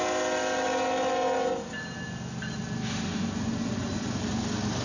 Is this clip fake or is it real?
real